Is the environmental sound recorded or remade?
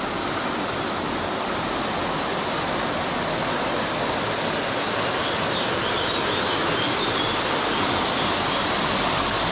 recorded